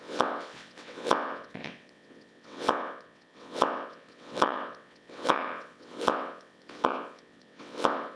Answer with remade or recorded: remade